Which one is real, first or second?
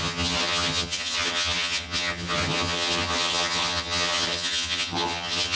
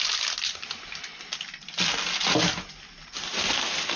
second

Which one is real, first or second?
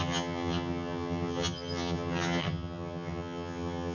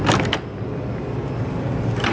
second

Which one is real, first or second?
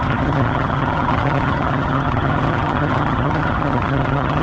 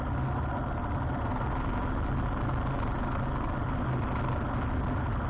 second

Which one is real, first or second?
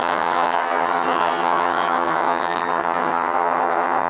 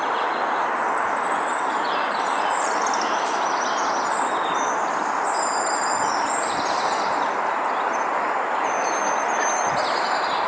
second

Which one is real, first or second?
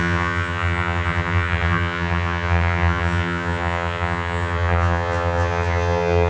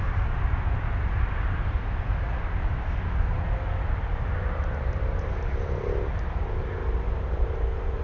second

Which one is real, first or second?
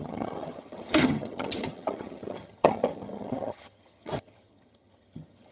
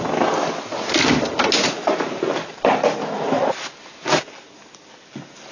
second